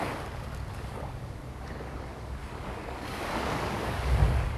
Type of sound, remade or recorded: remade